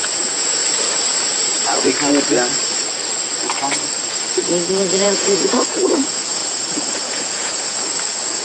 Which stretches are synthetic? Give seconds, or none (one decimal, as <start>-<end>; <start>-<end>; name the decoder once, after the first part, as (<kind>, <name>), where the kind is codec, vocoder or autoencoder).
0.0-0.6 (vocoder, Vocos); 4.7-8.4